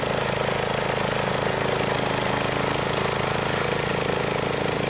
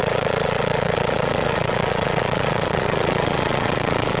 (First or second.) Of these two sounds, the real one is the first